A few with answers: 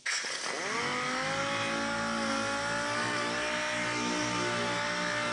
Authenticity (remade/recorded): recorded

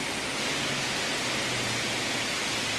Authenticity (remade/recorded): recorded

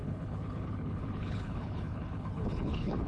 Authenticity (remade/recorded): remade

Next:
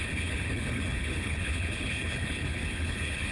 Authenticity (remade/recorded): remade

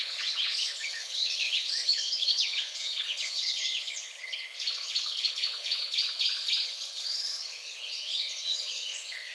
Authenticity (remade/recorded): remade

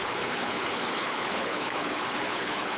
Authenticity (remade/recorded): remade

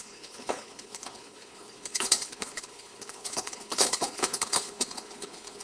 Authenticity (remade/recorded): remade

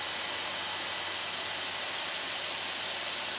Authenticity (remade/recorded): recorded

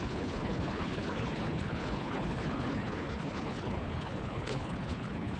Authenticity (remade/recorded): remade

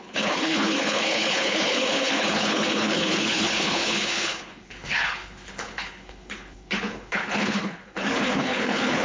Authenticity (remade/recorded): remade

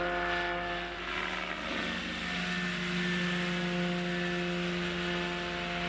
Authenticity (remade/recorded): recorded